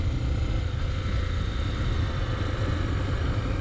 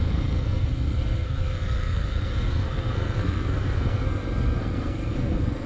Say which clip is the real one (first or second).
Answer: first